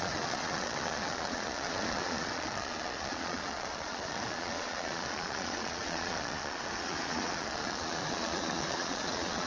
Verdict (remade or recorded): remade